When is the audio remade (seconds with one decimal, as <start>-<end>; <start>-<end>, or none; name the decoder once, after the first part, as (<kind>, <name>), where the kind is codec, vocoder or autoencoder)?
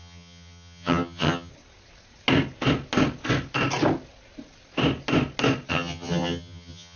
0.0-1.5 (vocoder, HiFi-GAN); 5.7-7.0